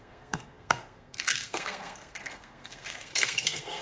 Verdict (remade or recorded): remade